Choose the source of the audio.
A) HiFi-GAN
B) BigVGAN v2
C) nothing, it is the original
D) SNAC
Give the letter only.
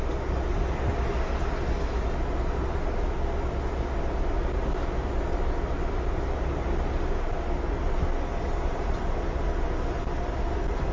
C